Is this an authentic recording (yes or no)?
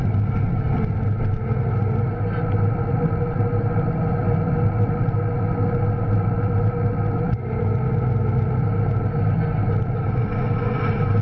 yes